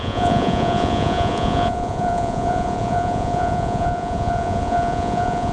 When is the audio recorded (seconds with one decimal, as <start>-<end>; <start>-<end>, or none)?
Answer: none